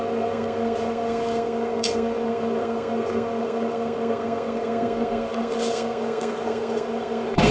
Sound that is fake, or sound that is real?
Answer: fake